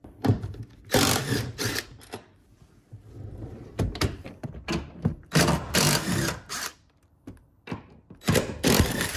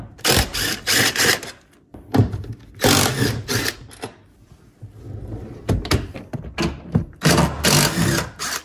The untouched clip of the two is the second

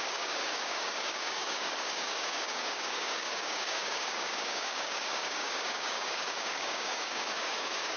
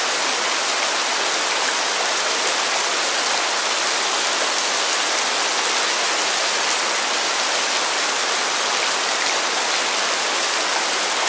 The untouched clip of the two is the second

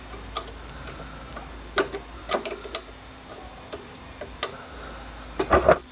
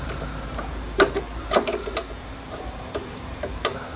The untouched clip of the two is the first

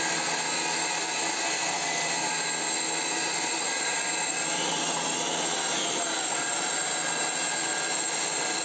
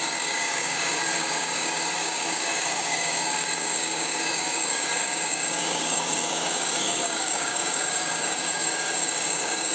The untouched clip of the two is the first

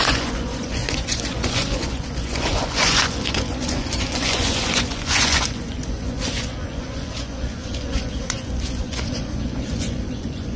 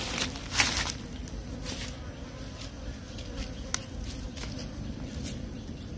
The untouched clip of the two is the second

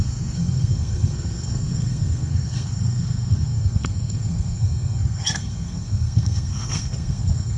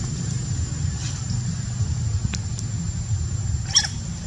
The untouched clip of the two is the second